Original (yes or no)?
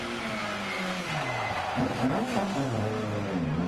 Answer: yes